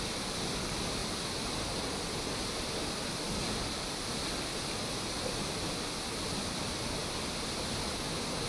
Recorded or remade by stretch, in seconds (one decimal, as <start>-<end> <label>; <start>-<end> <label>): 0.0-8.5 recorded